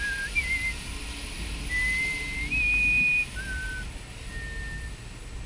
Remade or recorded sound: recorded